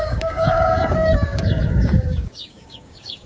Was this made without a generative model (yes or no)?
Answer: no